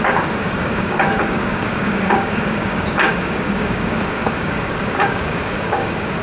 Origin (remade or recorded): remade